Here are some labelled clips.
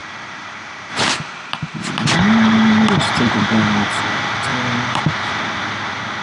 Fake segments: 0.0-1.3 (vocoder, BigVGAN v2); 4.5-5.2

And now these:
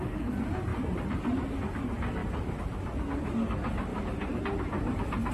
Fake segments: 0.7-1.5 (vocoder, BigVGAN v2); 2.2-3.0; 3.9-4.4

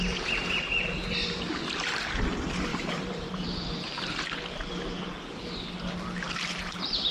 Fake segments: 2.7-4.3 (vocoder, BigVGAN v2)